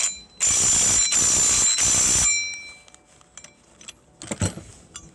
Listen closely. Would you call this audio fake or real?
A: real